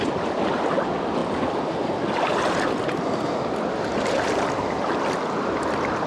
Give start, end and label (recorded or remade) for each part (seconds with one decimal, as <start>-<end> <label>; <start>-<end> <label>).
0.0-6.1 recorded